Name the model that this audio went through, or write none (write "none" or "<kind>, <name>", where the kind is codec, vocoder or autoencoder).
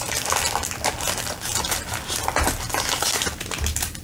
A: none